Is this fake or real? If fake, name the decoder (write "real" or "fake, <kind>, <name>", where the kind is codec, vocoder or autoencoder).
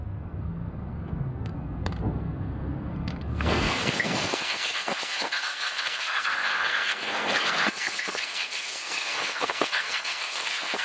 fake, codec, SNAC